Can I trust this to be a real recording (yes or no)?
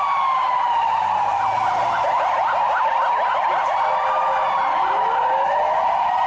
yes